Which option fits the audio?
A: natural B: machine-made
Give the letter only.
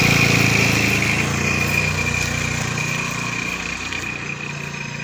A